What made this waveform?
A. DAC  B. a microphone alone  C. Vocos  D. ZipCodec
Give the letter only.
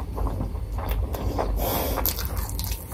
B